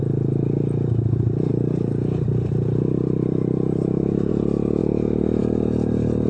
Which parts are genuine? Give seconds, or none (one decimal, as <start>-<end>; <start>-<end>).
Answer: 0.0-1.5; 4.3-6.3